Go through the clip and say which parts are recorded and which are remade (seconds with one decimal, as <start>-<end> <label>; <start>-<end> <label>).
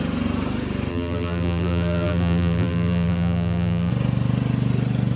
0.0-0.9 recorded; 0.9-3.9 remade; 3.9-5.2 recorded